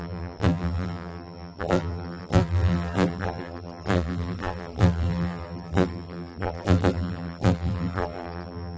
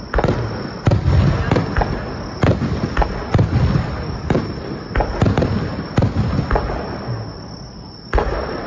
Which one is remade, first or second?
first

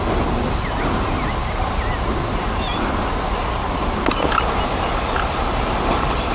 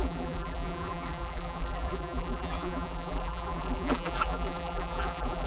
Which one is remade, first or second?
second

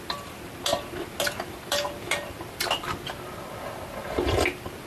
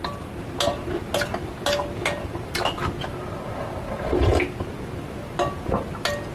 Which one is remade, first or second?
first